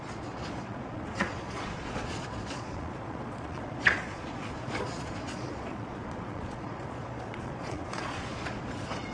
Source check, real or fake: fake